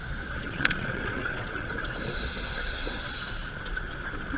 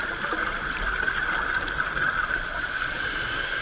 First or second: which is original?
second